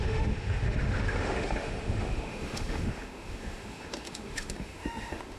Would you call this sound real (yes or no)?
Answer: no